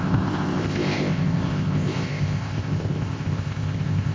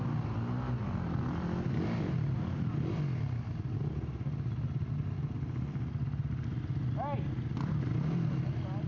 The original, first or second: second